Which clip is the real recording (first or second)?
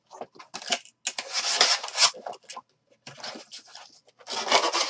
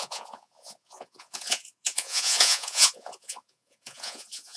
first